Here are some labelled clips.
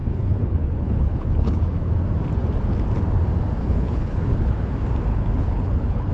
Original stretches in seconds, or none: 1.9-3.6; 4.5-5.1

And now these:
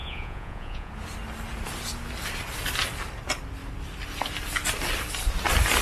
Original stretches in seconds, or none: 0.9-5.8

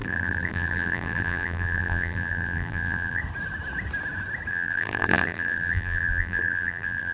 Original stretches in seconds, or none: 3.2-4.5

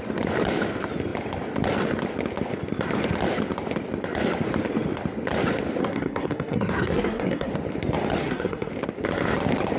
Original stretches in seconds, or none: 0.0-5.8; 7.5-8.2; 8.7-9.8

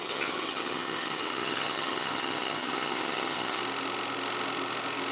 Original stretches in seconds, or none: 3.6-5.1

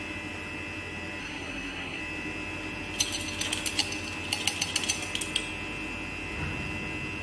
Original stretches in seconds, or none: 0.0-1.2; 2.0-7.2